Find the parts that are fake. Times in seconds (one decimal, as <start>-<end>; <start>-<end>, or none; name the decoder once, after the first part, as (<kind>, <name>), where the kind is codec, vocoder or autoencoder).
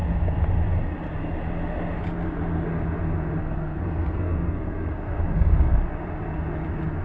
3.4-5.8 (codec, SNAC)